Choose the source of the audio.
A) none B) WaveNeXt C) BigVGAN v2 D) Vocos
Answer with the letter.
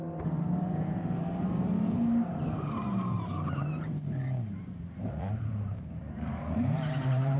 C